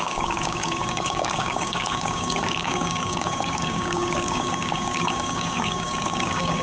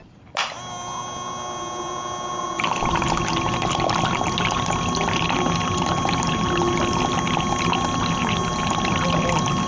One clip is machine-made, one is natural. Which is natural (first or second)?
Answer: second